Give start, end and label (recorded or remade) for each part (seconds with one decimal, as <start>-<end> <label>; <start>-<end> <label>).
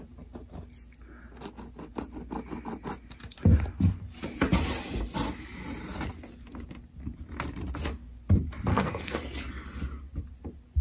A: 0.0-8.7 recorded; 8.7-9.2 remade; 9.2-10.8 recorded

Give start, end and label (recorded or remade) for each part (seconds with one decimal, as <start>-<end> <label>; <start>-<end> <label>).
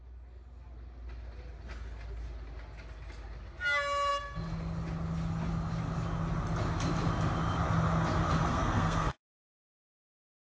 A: 0.0-8.5 recorded; 8.5-9.2 remade; 9.2-10.4 recorded